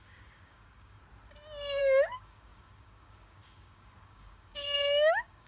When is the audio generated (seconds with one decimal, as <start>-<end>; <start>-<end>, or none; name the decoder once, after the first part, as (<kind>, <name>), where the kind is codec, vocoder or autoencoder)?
0.0-1.0 (codec, DAC); 1.8-5.5